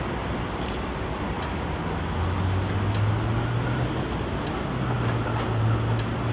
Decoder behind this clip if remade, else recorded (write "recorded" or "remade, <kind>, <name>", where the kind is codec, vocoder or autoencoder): recorded